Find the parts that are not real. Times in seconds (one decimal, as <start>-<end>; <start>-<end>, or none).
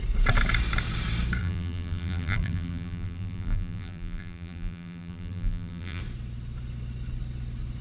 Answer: 1.4-6.0